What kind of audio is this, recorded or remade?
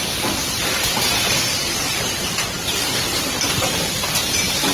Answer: remade